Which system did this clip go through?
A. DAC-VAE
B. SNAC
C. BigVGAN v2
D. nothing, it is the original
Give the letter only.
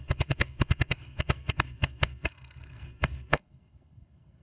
B